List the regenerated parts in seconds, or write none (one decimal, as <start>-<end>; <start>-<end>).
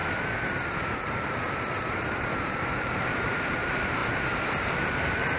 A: 1.9-5.4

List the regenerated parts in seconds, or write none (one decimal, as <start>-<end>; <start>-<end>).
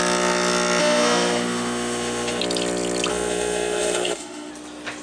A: 0.8-2.4; 3.1-4.5